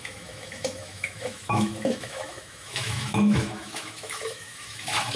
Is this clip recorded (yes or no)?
no